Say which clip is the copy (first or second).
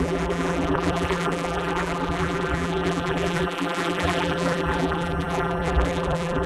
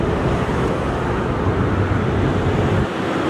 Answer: first